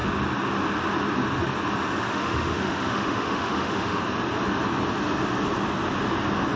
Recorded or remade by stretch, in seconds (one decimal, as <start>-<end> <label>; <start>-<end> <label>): 0.0-2.1 recorded; 2.1-4.0 remade; 4.0-6.6 recorded